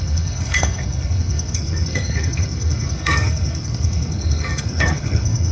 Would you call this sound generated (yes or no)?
yes